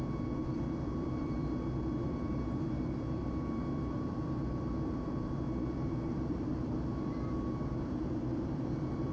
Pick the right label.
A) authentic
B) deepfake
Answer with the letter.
B